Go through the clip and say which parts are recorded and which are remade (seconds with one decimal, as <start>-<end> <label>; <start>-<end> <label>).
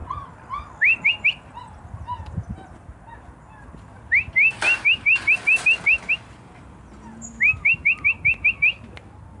0.0-9.4 recorded